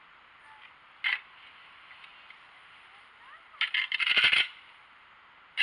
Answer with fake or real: real